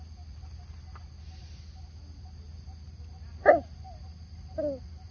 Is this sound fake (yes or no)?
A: no